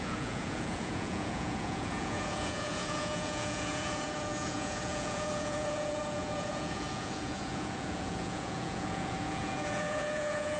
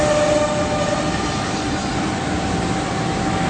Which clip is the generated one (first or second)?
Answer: first